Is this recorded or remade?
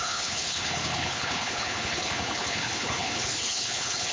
remade